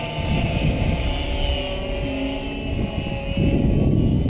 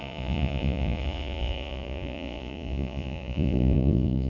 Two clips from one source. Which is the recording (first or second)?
first